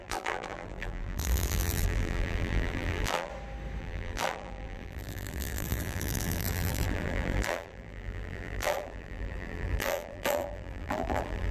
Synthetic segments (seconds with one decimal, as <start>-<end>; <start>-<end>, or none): 0.0-3.3; 3.8-11.5